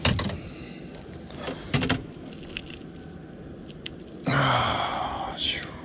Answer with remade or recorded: recorded